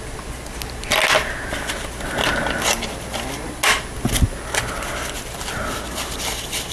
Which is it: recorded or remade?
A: recorded